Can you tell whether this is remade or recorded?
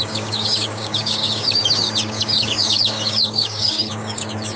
remade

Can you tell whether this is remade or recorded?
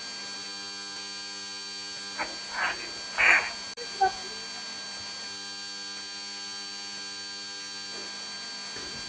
recorded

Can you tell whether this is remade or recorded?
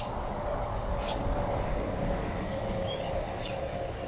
remade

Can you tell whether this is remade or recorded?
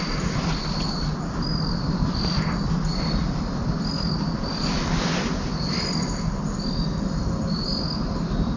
recorded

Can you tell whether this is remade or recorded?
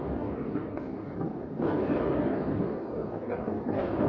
remade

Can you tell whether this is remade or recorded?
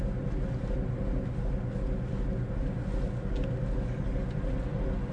recorded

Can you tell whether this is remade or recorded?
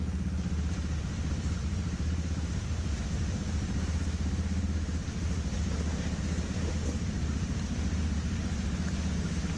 recorded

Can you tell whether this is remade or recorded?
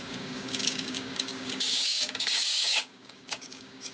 remade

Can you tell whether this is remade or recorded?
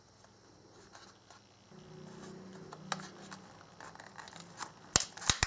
recorded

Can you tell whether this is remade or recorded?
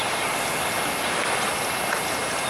recorded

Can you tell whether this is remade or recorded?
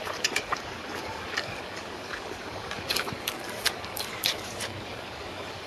remade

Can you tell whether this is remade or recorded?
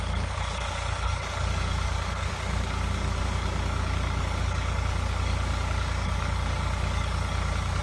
remade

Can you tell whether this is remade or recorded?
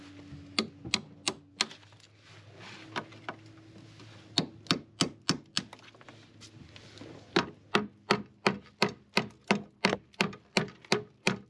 recorded